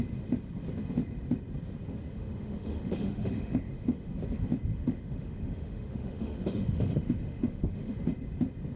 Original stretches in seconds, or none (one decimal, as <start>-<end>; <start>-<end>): 0.0-2.1; 4.1-4.7; 8.0-8.8